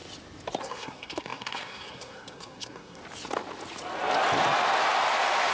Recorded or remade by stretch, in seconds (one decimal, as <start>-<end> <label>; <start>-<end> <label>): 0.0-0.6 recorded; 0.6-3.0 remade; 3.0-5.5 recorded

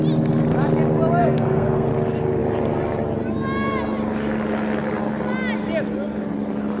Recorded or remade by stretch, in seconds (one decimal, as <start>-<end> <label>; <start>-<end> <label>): 0.0-1.2 recorded; 1.2-1.9 remade; 1.9-6.8 recorded

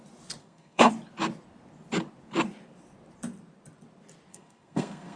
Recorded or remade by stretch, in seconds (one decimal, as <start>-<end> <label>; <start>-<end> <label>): 0.0-0.4 recorded; 0.4-0.9 remade; 0.9-4.3 recorded; 4.3-5.2 remade